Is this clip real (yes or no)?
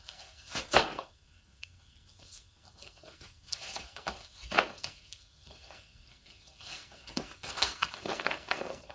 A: no